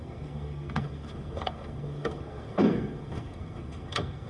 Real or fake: fake